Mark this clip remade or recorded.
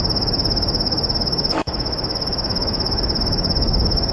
remade